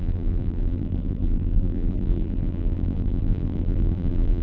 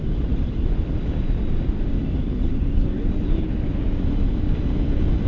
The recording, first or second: second